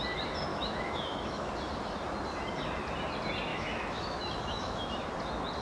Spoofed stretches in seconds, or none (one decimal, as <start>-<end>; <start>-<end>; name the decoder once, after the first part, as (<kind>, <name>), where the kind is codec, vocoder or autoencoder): 0.5-1.5 (autoencoder, DAC-VAE); 3.5-5.1